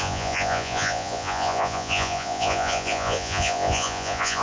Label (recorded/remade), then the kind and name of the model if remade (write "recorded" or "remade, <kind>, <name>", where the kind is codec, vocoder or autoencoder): remade, vocoder, Vocos